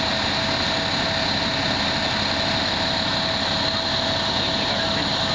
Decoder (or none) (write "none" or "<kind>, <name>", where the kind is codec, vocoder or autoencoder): none